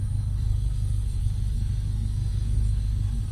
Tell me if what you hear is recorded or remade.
remade